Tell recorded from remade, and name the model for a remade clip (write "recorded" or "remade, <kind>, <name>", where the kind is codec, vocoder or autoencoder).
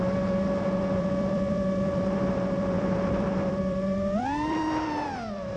remade, vocoder, BigVGAN v2